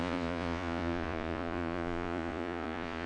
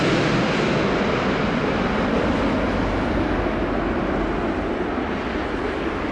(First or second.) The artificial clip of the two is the first